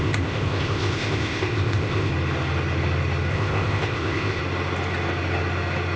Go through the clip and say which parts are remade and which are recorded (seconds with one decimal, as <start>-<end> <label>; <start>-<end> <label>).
0.0-2.1 remade; 2.1-3.3 recorded; 3.3-4.4 remade; 4.4-6.0 recorded